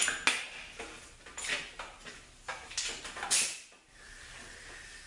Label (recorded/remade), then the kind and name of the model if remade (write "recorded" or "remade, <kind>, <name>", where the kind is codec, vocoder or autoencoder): recorded